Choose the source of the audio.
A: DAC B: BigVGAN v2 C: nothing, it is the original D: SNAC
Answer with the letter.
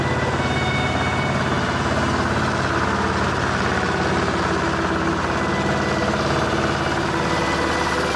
C